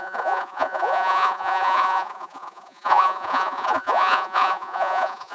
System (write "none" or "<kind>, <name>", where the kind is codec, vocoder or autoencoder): vocoder, Vocos